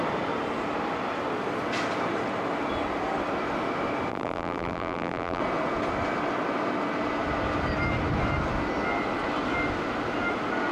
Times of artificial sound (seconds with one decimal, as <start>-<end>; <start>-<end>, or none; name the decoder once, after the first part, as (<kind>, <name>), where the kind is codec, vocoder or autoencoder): 4.1-5.4 (vocoder, BigVGAN v2)